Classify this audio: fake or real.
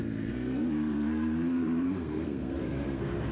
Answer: fake